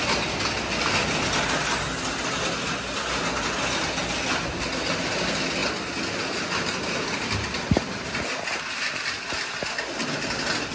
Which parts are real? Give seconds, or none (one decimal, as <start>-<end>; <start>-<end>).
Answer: 0.0-10.7